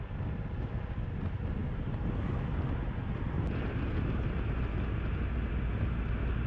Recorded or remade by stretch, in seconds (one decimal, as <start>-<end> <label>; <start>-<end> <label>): 0.0-6.5 recorded